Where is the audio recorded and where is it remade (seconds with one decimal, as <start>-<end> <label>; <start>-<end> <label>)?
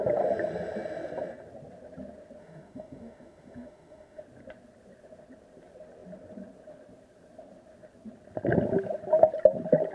0.0-2.4 recorded; 2.4-4.2 remade; 4.2-9.9 recorded